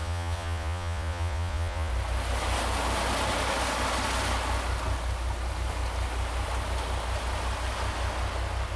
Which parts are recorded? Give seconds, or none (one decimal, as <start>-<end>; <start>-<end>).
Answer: 1.9-8.8

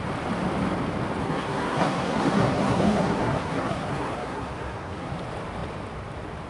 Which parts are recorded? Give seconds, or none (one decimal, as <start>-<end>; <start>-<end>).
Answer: 0.0-1.2; 5.1-6.5